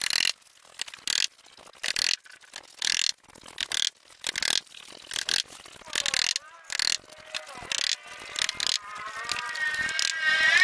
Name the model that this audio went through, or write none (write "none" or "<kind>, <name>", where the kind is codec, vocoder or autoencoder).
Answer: none